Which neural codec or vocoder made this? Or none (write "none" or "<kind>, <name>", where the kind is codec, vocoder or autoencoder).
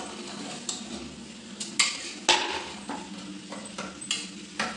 none